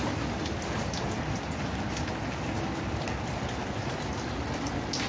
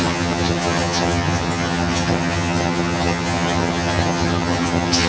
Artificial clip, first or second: second